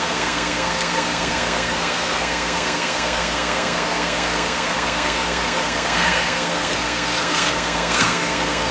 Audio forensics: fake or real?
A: fake